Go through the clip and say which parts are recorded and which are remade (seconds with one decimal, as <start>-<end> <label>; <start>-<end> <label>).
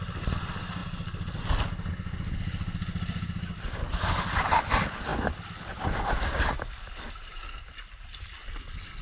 0.0-9.0 recorded